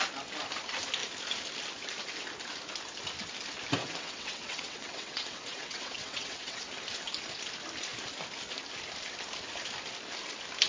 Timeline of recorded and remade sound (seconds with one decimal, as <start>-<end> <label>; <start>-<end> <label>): 0.0-3.8 recorded; 3.8-6.7 remade; 6.7-10.7 recorded